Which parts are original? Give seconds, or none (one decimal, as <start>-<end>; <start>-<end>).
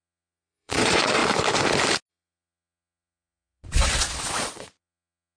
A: 1.2-2.1